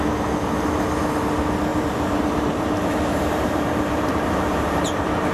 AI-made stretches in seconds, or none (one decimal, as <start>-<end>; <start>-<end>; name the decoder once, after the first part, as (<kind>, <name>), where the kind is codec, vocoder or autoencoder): 1.7-5.3 (vocoder, BigVGAN v2)

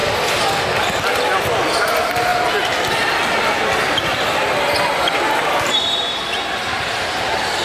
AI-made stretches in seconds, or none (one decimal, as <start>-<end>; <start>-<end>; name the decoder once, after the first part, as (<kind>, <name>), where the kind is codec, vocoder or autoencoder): none

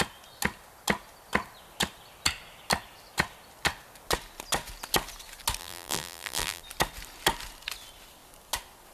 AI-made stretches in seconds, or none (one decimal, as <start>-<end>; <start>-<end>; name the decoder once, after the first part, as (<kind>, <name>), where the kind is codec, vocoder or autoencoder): 5.6-6.6 (vocoder, BigVGAN v2)

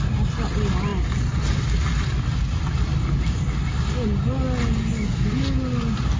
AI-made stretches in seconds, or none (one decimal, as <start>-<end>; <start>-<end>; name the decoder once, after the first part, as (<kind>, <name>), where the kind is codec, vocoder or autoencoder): none